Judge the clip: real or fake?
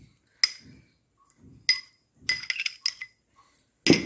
real